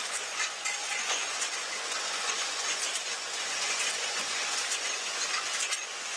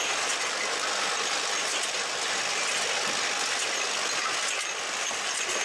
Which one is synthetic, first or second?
first